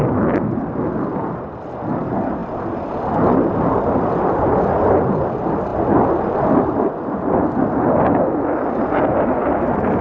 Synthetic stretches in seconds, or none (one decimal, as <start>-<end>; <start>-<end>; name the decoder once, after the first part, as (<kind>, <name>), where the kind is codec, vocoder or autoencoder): 2.4-3.1 (vocoder, BigVGAN v2)